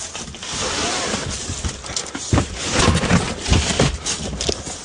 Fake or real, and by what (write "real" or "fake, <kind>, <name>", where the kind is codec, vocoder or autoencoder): real